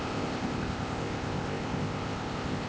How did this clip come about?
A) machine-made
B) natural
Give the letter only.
A